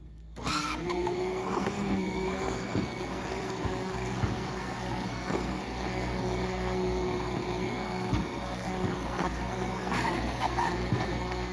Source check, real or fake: fake